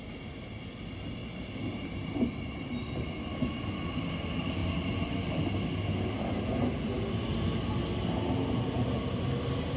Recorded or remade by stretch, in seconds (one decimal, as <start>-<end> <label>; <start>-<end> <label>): 0.0-3.3 recorded; 3.3-3.9 remade; 3.9-9.8 recorded